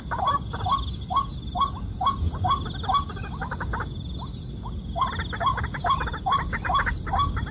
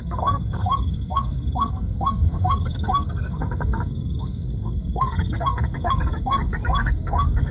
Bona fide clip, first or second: first